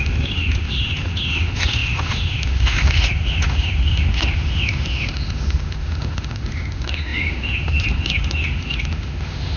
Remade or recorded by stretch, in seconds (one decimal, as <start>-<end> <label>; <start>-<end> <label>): 0.0-9.6 remade